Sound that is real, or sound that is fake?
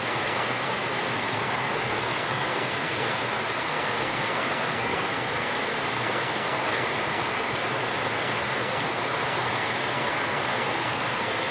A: fake